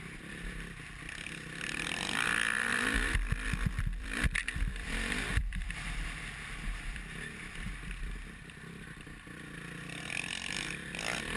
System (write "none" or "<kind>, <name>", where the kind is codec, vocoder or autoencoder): vocoder, BigVGAN v2